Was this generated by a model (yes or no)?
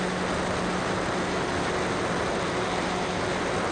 no